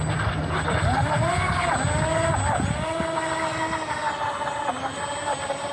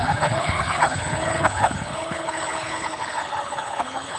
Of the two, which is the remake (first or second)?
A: second